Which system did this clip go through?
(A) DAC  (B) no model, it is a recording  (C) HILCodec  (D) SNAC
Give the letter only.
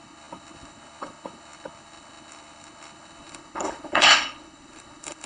C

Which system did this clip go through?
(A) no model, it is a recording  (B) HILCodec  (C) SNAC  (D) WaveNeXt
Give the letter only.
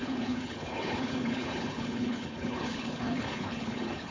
B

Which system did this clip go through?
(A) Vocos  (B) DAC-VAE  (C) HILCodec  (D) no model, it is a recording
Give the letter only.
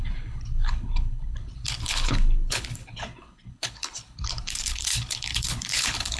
C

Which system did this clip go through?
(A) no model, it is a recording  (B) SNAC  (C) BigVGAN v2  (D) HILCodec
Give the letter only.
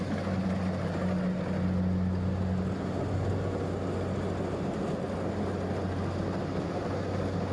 A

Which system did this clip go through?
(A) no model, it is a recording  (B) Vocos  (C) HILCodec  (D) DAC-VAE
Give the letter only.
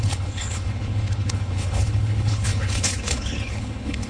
C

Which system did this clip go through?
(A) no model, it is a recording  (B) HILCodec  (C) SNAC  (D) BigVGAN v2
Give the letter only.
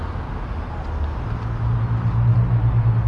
A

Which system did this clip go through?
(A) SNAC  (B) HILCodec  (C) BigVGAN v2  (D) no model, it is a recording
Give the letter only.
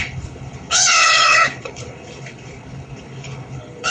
B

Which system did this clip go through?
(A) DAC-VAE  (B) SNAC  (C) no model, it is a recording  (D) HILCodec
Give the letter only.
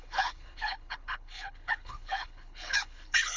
D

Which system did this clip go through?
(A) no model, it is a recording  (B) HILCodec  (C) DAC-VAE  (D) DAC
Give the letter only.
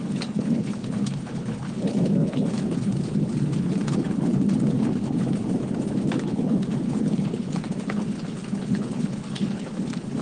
B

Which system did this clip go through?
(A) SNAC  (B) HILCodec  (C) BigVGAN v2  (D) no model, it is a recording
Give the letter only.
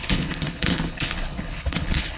B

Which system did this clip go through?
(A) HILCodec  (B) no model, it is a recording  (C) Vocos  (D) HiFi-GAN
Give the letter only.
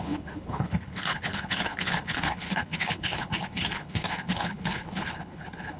A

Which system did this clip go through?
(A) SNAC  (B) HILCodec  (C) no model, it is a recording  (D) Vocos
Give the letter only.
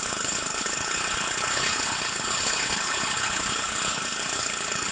B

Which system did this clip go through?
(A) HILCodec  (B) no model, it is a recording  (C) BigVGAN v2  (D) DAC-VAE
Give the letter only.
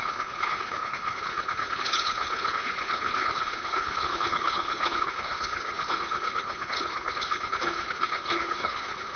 A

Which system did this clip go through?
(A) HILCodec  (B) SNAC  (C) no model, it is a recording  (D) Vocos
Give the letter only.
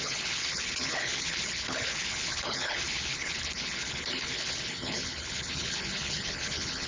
A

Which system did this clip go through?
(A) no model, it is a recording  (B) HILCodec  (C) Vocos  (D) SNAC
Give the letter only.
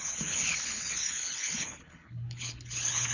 B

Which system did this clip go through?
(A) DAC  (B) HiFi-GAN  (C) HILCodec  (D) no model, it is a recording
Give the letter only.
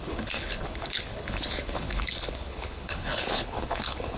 C